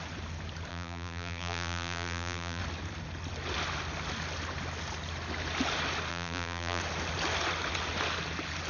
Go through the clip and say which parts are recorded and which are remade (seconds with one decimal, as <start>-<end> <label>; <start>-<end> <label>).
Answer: 0.0-0.7 recorded; 0.7-2.6 remade; 2.6-6.1 recorded; 6.1-6.8 remade; 6.8-8.7 recorded